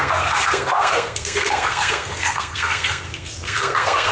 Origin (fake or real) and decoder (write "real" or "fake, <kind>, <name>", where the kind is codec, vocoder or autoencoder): fake, codec, SNAC